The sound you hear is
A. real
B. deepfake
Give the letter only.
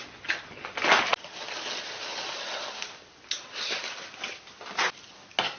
A